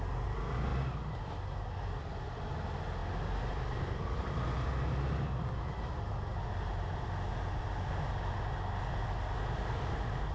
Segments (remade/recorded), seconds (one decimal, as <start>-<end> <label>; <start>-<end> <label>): 0.0-10.3 recorded